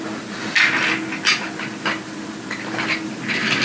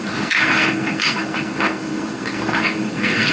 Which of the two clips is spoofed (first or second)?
second